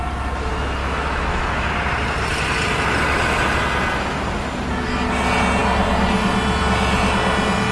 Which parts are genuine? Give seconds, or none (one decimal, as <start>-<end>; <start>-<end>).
0.0-0.8; 1.7-7.7